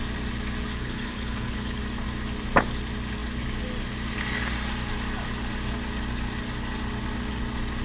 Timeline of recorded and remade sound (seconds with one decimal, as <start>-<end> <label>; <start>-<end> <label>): 0.0-0.7 recorded; 0.7-1.8 remade; 1.8-7.8 recorded